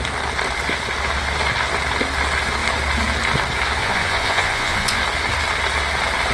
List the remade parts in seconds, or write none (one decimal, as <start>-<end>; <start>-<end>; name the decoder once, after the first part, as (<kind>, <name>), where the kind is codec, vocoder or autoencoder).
3.8-5.0 (vocoder, Vocos)